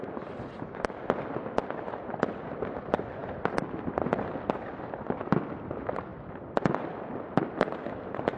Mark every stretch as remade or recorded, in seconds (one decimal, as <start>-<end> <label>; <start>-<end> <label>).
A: 0.0-8.4 recorded